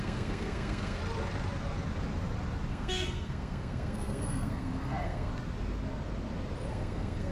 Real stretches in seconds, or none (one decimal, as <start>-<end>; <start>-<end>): 1.0-2.7; 5.3-6.7